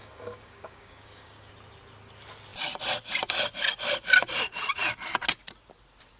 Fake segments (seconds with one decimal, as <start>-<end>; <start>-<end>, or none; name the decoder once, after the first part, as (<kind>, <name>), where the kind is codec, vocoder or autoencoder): 0.0-1.5 (codec, DAC)